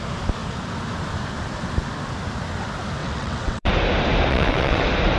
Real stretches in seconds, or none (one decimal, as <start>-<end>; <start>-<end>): 0.0-3.0; 3.7-4.3; 4.8-5.2